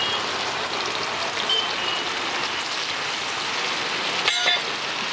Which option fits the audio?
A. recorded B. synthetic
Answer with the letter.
A